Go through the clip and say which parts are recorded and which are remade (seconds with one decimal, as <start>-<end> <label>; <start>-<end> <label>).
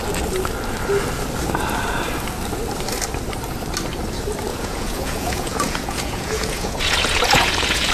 0.0-4.5 recorded; 4.5-7.9 remade